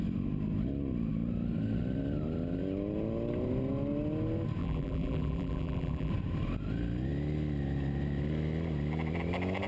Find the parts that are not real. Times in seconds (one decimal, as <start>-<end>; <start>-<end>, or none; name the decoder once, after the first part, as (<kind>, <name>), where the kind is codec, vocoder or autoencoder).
4.6-6.1 (vocoder, BigVGAN v2)